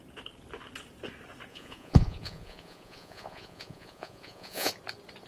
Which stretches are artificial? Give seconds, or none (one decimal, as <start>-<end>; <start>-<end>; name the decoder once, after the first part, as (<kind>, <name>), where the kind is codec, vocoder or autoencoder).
1.5-4.7 (vocoder, Vocos)